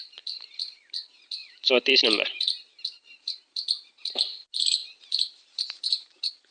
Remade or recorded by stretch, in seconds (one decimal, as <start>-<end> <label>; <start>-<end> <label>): 0.0-1.4 recorded; 1.4-2.0 remade; 2.0-4.8 recorded; 4.8-5.8 remade; 5.8-6.5 recorded